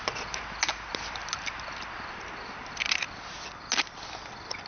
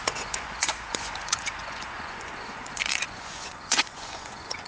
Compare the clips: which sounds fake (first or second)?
second